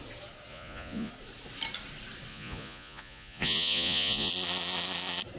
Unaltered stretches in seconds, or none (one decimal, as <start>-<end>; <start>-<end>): 0.0-0.5; 1.1-2.3; 4.3-5.4